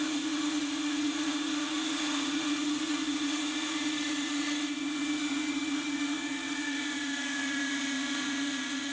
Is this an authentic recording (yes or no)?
no